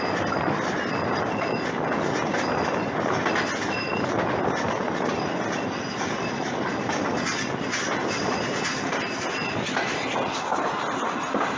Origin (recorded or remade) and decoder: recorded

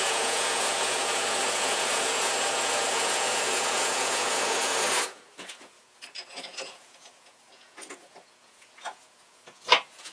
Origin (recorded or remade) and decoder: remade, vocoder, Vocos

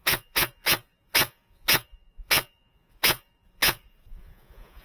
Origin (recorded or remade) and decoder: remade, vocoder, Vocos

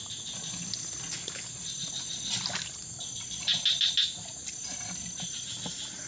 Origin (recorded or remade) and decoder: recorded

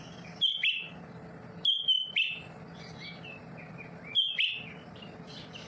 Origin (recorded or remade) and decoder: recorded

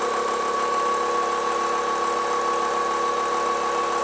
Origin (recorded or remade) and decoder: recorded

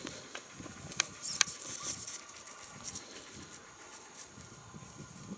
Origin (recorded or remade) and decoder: recorded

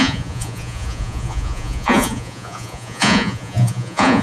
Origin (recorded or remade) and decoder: remade, vocoder, Vocos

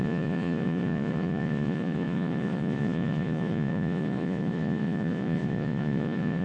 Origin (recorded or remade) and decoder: remade, vocoder, Vocos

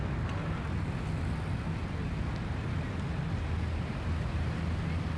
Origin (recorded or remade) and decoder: recorded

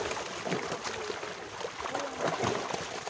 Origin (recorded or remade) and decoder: recorded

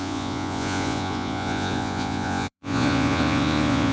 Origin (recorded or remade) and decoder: remade, vocoder, Vocos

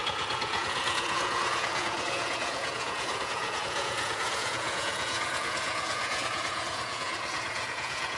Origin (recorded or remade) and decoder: remade, vocoder, Vocos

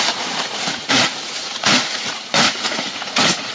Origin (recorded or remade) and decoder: remade, vocoder, Vocos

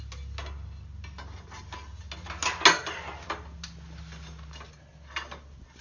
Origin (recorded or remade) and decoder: recorded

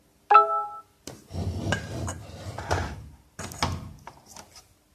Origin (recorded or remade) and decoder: recorded